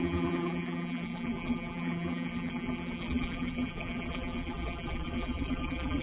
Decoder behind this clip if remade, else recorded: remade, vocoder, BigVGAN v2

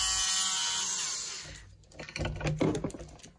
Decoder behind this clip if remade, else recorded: recorded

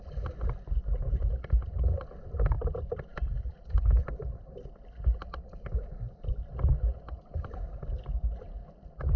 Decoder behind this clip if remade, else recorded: recorded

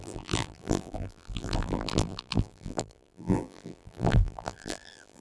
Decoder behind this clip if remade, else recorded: remade, vocoder, BigVGAN v2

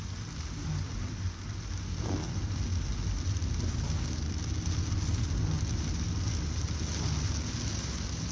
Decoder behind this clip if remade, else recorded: recorded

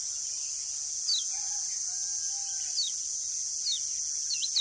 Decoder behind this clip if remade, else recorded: recorded